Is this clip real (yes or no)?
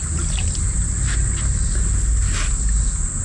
yes